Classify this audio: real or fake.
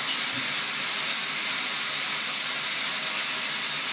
real